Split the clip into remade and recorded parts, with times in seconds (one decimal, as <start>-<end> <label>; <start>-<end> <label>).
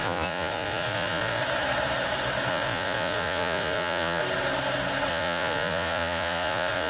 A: 0.0-1.4 remade; 1.4-2.5 recorded; 2.5-4.2 remade; 4.2-5.1 recorded; 5.1-6.9 remade